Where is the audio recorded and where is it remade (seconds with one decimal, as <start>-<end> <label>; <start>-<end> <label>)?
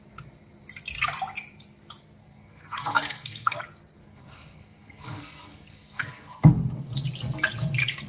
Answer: 0.0-2.2 recorded; 2.2-3.6 remade; 3.6-4.0 recorded; 4.0-6.5 remade; 6.5-8.1 recorded